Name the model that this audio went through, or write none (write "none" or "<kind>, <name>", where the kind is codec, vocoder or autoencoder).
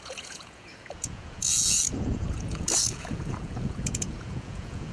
vocoder, Vocos